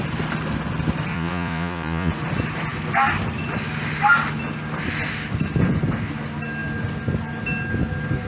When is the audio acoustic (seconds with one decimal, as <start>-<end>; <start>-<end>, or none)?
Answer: 0.0-1.1; 2.1-8.3